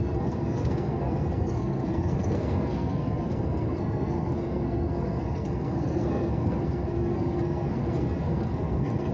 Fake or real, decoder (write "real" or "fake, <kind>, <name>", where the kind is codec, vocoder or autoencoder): fake, codec, SNAC